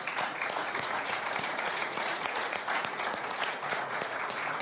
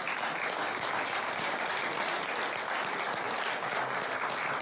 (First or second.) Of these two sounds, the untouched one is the second